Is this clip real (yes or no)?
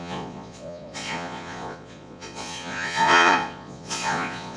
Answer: no